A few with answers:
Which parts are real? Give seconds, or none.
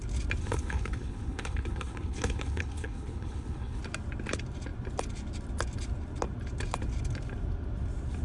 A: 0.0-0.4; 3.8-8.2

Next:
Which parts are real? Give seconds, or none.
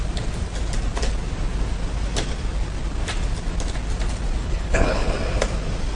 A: 0.0-4.4; 5.1-6.0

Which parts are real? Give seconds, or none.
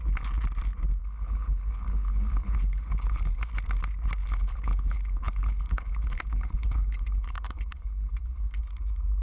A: 0.0-1.0; 3.5-4.2; 8.6-9.2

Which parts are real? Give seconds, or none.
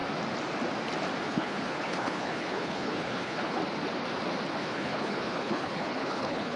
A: 0.0-1.2; 3.6-4.5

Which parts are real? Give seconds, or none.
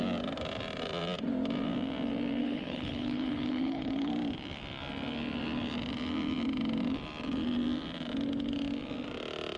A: 0.0-2.4; 4.1-9.6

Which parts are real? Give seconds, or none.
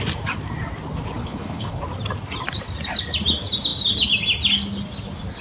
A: 0.0-1.2; 1.8-5.4